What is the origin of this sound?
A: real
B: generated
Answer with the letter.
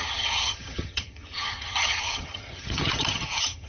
B